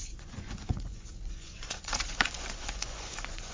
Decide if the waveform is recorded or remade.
remade